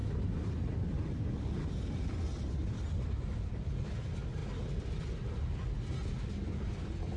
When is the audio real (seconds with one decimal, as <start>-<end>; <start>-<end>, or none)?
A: 0.0-7.2